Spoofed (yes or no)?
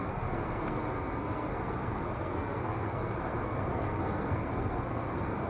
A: yes